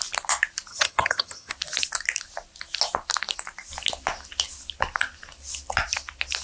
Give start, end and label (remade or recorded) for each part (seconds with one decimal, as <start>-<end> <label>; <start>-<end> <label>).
0.0-0.7 recorded; 0.7-1.5 remade; 1.5-6.4 recorded